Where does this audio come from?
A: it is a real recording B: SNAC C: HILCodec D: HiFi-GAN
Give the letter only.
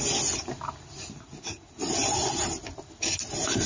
A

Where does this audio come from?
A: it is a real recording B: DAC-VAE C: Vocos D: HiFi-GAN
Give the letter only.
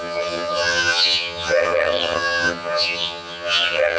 D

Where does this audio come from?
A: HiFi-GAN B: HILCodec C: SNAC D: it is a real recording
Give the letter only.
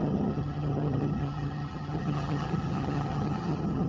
A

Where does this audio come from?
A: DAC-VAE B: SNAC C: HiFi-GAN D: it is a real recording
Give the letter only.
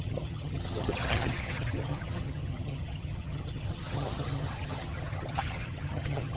C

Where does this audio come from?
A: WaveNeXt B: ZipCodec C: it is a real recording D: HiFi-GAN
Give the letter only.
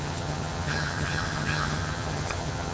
D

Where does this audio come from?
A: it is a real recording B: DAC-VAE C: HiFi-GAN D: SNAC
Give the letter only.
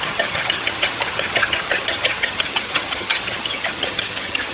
C